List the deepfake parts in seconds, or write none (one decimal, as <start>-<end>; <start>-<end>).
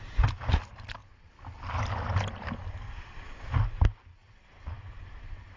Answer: none